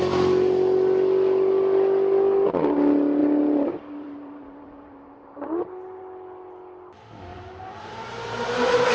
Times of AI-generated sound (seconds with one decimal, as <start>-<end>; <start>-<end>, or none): 3.2-6.0; 7.3-8.9